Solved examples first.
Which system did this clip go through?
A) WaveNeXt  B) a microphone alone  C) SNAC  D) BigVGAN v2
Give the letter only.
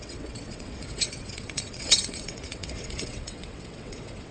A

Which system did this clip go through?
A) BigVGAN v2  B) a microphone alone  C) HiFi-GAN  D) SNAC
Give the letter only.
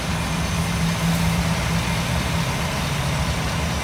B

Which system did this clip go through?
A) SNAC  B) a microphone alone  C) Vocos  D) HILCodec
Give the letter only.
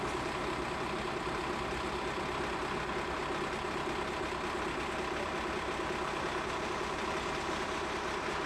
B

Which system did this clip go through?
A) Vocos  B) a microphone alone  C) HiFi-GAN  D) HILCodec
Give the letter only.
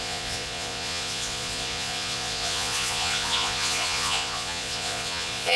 A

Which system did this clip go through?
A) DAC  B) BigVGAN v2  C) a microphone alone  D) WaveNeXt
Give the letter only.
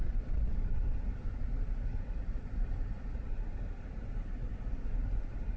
C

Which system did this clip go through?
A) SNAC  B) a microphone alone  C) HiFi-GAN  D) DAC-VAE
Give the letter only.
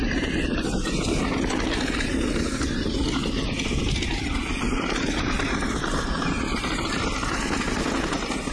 B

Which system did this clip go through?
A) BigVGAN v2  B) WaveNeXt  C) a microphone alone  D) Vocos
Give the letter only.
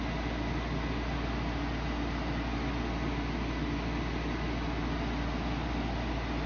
C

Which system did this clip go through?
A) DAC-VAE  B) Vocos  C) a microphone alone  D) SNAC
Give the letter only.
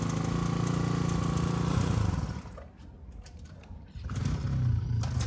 C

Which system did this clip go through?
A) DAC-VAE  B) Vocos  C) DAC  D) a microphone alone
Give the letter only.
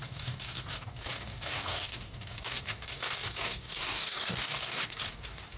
C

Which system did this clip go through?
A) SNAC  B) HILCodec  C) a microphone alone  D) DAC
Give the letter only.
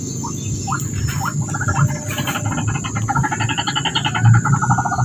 C